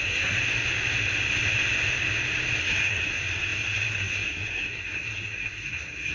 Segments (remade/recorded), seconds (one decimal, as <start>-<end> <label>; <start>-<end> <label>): 0.0-0.4 remade; 0.4-2.6 recorded; 2.6-6.1 remade